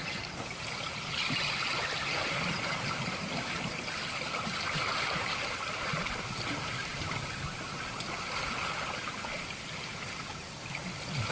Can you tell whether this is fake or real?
real